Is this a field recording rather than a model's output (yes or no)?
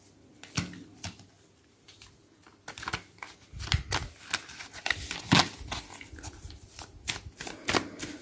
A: yes